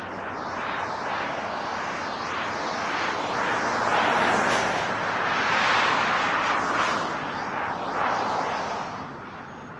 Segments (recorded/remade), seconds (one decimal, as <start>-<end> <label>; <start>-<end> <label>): 0.0-9.8 recorded